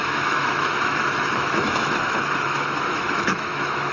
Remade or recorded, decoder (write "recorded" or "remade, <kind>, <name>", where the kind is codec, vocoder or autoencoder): remade, autoencoder, DAC-VAE